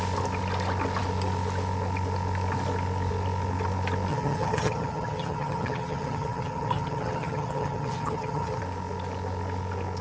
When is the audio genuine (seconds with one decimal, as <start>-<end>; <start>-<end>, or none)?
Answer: 0.0-4.1; 8.6-10.0